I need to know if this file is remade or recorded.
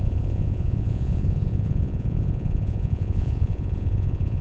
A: remade